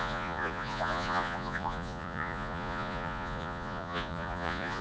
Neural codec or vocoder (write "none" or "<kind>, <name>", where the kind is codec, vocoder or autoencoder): vocoder, Vocos